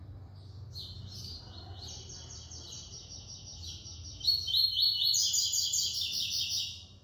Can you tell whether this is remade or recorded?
recorded